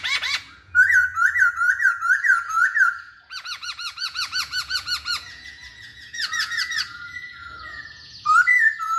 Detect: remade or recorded remade